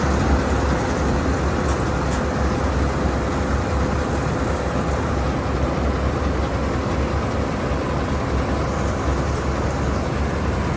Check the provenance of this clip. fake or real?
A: real